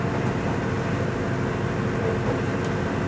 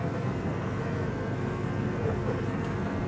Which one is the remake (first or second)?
second